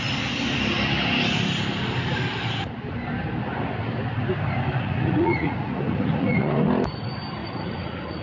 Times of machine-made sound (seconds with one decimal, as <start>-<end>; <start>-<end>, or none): 4.7-6.6; 7.4-8.2